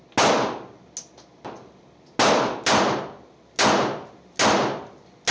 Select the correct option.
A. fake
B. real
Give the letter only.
B